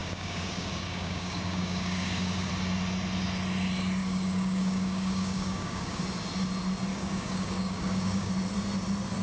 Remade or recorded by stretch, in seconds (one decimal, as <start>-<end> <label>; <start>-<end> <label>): 0.0-2.5 remade; 2.5-4.0 recorded; 4.0-6.0 remade; 6.0-6.9 recorded; 6.9-8.3 remade; 8.3-9.2 recorded